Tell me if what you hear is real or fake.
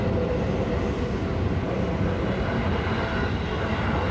real